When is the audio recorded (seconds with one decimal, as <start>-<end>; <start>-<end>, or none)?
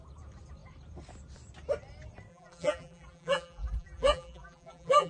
0.0-2.3